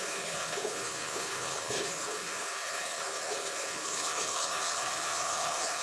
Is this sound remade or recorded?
remade